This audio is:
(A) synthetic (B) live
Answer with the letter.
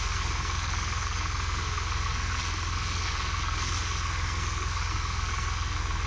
A